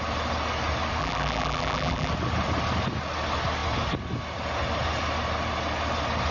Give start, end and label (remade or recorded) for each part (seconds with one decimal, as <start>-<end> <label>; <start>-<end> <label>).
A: 0.0-1.0 recorded; 1.0-2.1 remade; 2.1-6.3 recorded